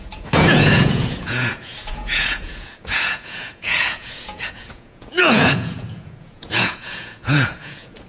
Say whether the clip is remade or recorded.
remade